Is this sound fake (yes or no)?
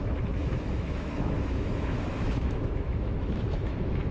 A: yes